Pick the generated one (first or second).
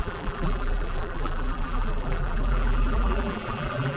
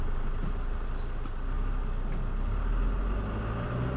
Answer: first